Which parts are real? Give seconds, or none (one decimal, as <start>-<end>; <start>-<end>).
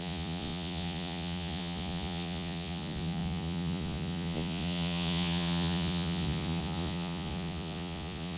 none